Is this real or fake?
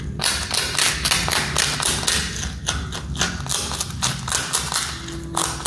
real